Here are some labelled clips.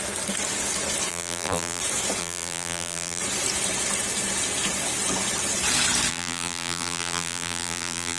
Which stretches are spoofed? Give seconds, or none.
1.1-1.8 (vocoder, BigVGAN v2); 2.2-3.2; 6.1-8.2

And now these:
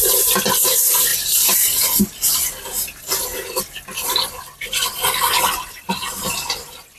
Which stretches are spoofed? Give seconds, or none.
none

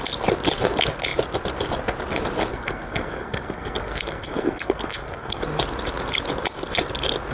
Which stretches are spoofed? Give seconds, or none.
2.5-5.4 (codec, SNAC)

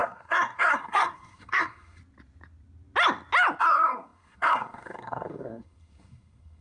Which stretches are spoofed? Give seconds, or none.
0.0-2.0 (codec, SNAC); 3.6-6.6

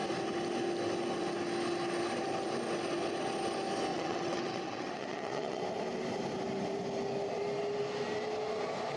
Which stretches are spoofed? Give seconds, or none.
3.9-5.6 (vocoder, WaveNeXt)

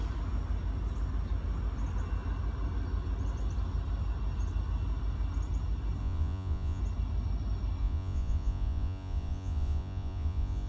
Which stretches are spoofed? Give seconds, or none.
6.0-6.8 (vocoder, Vocos); 7.8-10.7

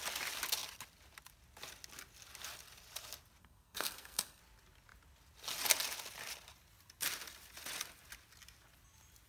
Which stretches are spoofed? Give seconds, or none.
3.4-4.4 (codec, SNAC)